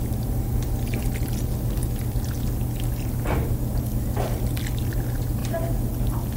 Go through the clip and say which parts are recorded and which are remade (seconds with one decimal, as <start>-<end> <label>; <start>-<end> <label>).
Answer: 0.0-6.4 recorded